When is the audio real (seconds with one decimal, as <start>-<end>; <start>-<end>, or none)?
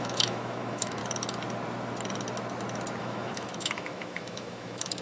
1.0-3.0